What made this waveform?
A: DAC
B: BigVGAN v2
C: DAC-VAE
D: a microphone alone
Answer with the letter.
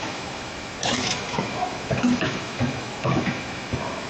C